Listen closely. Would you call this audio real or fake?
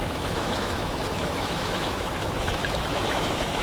fake